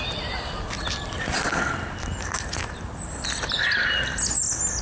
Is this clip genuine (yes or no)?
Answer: yes